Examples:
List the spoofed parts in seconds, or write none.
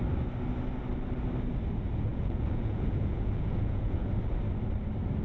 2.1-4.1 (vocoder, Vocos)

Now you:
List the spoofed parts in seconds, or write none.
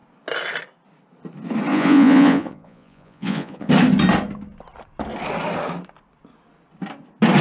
1.7-3.7 (vocoder, Vocos)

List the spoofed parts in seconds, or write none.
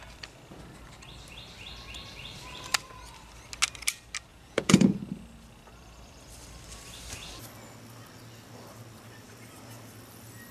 4.3-5.0 (vocoder, Vocos)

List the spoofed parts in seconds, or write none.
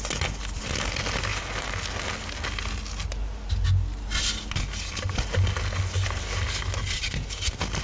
none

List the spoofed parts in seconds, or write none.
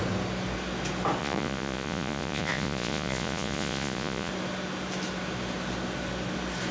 1.2-4.3 (vocoder, Vocos)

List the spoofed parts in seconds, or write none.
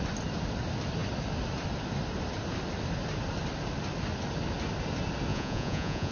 5.3-6.1 (vocoder, Vocos)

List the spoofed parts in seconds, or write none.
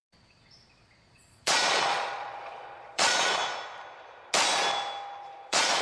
0.0-3.4 (vocoder, Vocos); 5.2-5.8